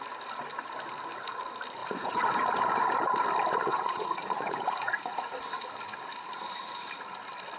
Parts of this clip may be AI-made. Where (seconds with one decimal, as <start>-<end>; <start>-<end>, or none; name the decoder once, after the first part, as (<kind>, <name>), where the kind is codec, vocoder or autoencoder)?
1.8-2.3 (vocoder, Vocos); 3.7-5.3